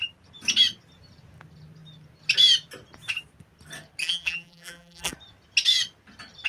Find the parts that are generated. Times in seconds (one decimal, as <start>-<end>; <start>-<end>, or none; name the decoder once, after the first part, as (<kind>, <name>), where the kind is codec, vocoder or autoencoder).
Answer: 4.0-5.1 (vocoder, BigVGAN v2)